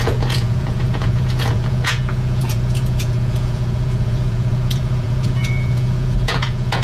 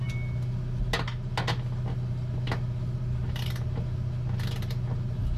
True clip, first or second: second